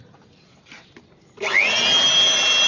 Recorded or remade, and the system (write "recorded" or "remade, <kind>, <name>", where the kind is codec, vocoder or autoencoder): recorded